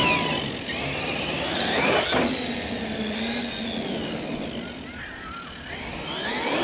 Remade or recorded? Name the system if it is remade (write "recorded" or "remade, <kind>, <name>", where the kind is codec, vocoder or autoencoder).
recorded